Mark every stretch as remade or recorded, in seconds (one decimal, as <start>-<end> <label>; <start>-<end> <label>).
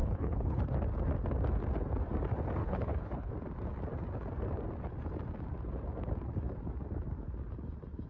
0.0-0.6 remade; 0.6-2.6 recorded; 2.6-3.3 remade; 3.3-8.1 recorded